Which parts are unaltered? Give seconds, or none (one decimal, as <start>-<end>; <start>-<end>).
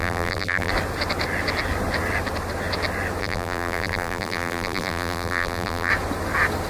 0.7-3.2; 5.9-6.7